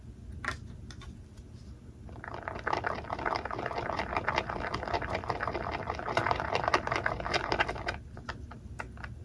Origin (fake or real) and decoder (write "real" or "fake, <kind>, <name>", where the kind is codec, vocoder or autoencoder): real